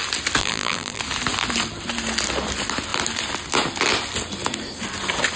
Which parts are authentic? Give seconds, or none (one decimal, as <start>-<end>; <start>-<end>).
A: 0.0-0.4; 1.0-5.4